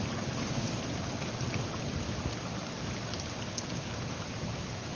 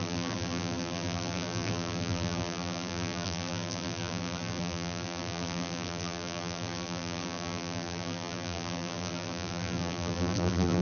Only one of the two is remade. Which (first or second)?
second